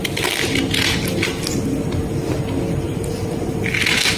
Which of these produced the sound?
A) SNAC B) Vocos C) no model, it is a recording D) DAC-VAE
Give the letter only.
C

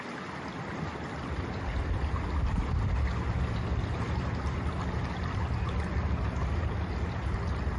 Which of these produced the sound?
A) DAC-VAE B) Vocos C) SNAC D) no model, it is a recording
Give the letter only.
D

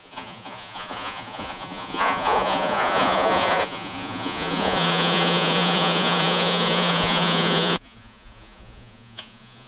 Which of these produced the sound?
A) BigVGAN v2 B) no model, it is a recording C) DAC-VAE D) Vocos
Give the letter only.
D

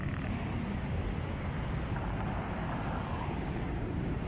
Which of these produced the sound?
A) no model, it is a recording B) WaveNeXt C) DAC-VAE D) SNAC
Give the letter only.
A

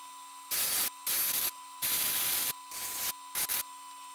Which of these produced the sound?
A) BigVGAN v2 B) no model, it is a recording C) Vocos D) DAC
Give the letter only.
B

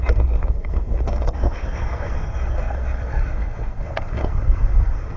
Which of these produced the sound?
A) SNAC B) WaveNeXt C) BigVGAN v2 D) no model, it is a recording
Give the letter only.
A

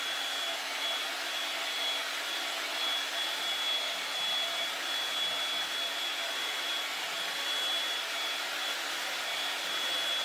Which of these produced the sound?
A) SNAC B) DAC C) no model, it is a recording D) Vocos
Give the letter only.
C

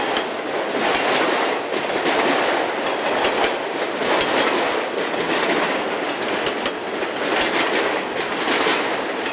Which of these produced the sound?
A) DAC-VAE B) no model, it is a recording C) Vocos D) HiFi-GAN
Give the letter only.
B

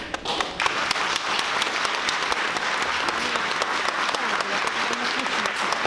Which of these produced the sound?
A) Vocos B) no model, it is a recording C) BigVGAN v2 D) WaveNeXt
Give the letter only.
B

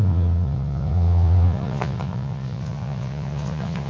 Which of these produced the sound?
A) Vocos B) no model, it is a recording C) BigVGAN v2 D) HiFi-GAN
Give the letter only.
A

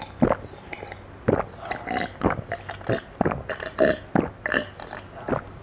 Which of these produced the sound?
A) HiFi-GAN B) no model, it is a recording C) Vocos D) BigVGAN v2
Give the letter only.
B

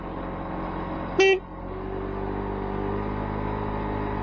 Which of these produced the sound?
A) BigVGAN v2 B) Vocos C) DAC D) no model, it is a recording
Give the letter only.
D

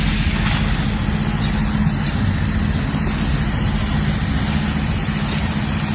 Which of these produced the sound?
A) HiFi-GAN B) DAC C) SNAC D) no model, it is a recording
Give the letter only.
D